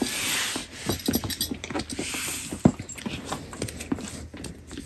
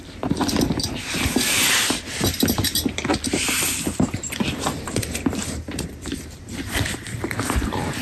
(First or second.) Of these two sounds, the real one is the first